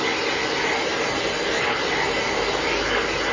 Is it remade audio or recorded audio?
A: recorded